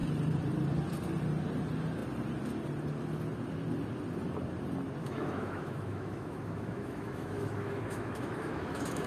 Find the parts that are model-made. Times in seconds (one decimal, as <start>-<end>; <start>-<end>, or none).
5.0-9.1